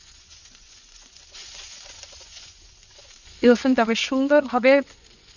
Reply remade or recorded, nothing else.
remade